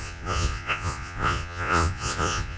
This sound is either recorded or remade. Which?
remade